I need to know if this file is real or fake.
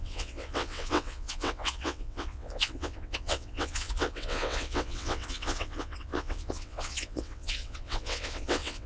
fake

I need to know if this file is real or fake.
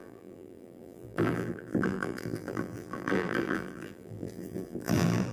fake